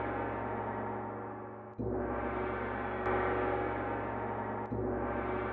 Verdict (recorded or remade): recorded